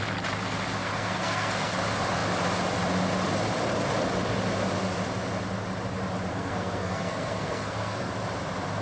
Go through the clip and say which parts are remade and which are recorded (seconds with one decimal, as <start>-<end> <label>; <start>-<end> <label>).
0.0-0.8 recorded; 0.8-1.7 remade; 1.7-6.3 recorded; 6.3-8.1 remade; 8.1-8.8 recorded